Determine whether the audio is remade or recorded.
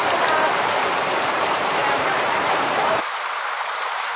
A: remade